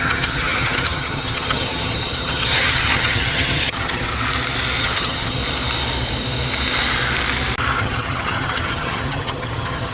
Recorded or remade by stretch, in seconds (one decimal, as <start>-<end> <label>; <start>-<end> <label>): 0.0-4.1 remade; 4.1-4.8 recorded; 4.8-5.4 remade; 5.4-7.8 recorded; 7.8-9.9 remade